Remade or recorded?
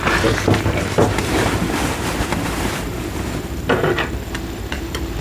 remade